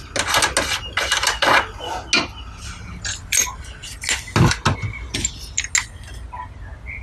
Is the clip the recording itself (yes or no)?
yes